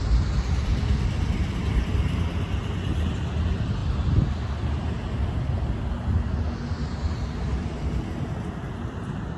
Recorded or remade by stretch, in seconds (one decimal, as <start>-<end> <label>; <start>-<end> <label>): 0.0-0.7 remade; 0.7-1.8 recorded; 1.8-3.8 remade; 3.8-8.5 recorded; 8.5-9.4 remade